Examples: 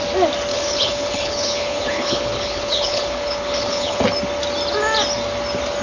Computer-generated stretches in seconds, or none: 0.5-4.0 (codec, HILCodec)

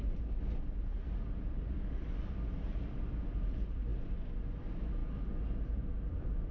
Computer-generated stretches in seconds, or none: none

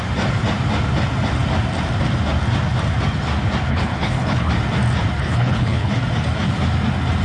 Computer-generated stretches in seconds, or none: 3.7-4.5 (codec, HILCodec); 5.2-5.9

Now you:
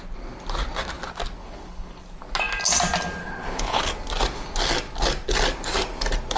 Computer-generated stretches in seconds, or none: 1.4-2.0 (codec, HILCodec); 3.2-3.8

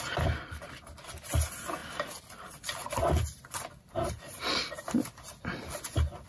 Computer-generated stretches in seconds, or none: none

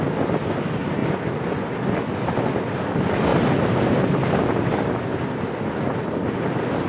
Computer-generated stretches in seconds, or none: none

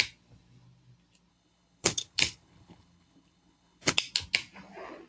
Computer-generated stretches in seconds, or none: 1.3-3.9 (codec, HILCodec)

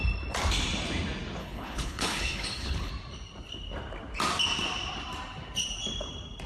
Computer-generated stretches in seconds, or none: 1.4-2.9 (codec, HILCodec)